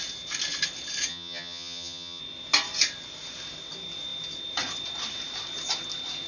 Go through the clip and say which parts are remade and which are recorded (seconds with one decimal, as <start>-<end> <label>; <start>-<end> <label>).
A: 0.0-1.1 recorded; 1.1-2.2 remade; 2.2-6.3 recorded